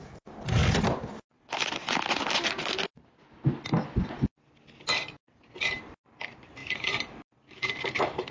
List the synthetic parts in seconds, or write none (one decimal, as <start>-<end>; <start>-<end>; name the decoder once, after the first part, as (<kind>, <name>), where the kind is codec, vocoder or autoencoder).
0.0-0.6 (vocoder, BigVGAN v2); 5.6-8.3